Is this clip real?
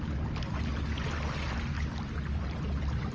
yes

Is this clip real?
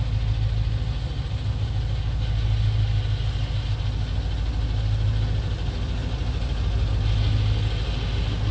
yes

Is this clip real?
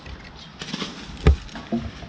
yes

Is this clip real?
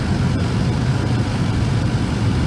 yes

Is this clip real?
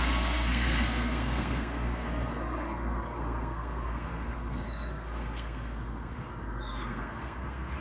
no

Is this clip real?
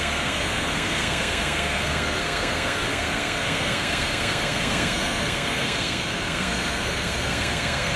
no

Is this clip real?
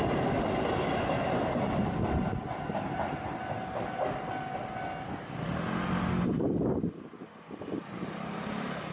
yes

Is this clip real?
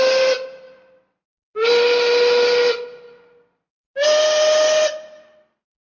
yes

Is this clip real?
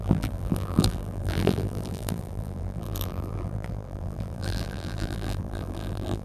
no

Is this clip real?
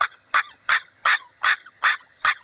no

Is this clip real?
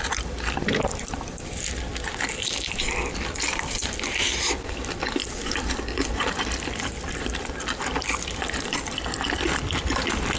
no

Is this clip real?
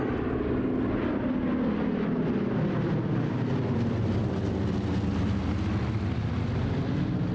yes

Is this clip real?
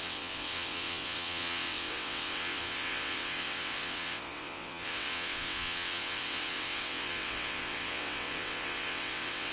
no